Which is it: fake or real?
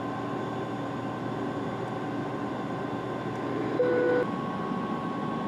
real